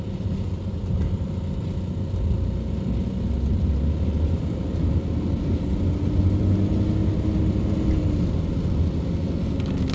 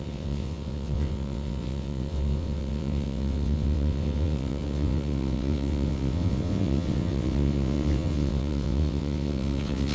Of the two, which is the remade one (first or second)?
second